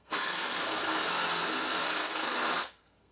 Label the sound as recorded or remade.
remade